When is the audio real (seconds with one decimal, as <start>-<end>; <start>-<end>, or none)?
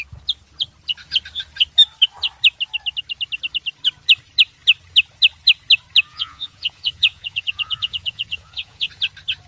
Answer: 0.0-6.1; 8.9-9.5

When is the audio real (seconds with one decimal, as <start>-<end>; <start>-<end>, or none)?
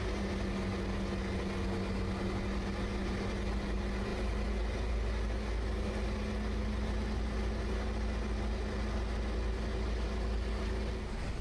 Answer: 0.0-11.4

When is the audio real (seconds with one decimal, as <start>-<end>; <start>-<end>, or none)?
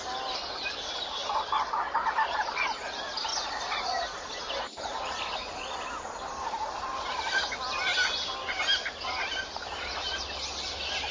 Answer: 0.0-11.1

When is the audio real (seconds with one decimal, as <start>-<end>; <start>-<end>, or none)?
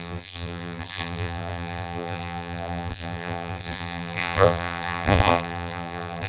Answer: none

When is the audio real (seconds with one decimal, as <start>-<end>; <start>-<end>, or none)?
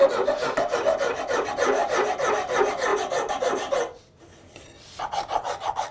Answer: 0.0-1.8; 2.3-2.9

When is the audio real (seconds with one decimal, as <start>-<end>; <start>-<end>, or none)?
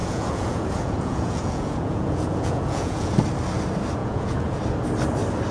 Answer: 3.1-4.0; 4.6-5.5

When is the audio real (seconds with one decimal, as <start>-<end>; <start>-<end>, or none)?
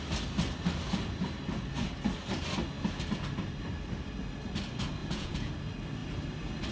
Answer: 0.0-5.0; 5.5-6.7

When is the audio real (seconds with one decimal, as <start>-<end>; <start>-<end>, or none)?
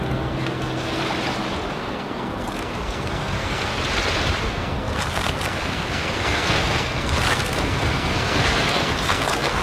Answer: 1.0-1.7; 3.7-4.4